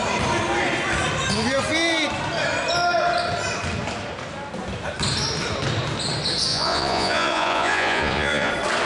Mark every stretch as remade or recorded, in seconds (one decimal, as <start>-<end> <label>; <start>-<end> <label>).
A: 0.0-6.5 recorded; 6.5-8.5 remade; 8.5-8.9 recorded